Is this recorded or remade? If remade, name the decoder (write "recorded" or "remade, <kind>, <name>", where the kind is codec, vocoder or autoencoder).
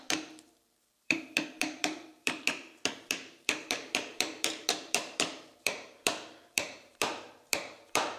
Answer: remade, vocoder, BigVGAN v2